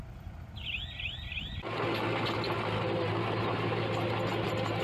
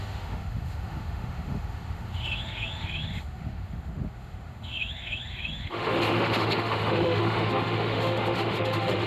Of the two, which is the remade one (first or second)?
second